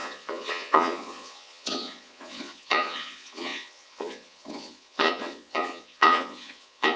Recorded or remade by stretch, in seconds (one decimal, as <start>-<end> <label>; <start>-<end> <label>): 0.0-7.0 remade